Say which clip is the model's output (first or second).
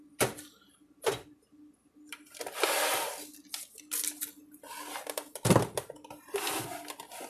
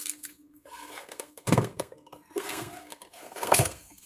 second